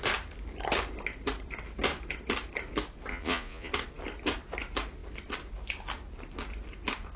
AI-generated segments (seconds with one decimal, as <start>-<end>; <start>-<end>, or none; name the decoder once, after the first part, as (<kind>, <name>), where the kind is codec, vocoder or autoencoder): 3.1-3.7 (vocoder, Vocos)